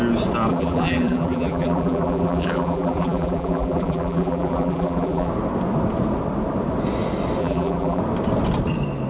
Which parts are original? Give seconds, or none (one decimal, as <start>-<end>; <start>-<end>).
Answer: 0.0-0.5; 5.3-7.4; 8.0-9.1